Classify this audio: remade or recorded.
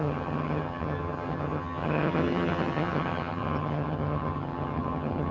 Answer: remade